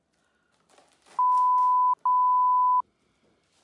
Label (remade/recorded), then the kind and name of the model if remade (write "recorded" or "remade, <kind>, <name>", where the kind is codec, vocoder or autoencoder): recorded